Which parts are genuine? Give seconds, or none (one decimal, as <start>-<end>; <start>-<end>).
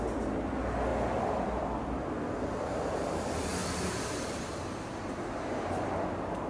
0.0-0.9; 2.1-3.6; 4.2-6.5